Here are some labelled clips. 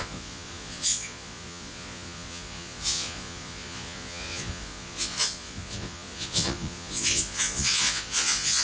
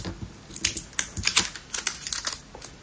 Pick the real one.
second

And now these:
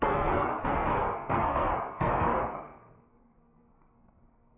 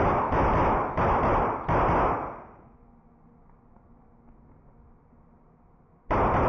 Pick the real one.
second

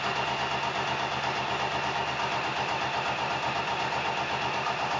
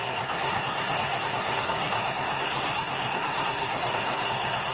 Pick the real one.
first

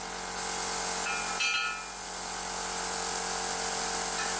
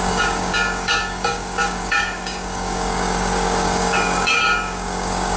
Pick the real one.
first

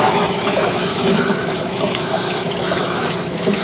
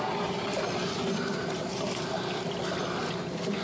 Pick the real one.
second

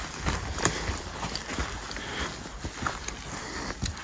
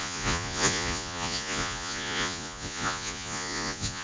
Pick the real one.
first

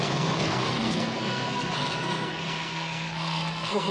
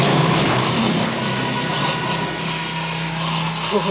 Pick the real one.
second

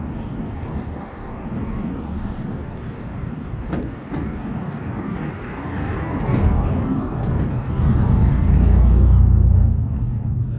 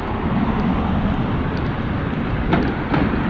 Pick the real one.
second